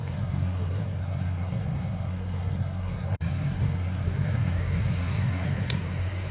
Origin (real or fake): fake